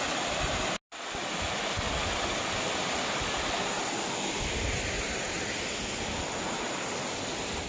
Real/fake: real